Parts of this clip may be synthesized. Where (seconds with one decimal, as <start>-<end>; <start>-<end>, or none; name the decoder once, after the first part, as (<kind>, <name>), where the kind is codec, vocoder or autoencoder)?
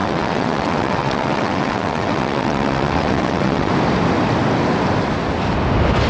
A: 0.0-3.7 (vocoder, WaveNeXt)